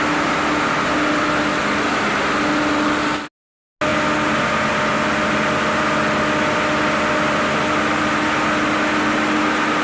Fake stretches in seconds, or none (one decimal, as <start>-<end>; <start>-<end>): none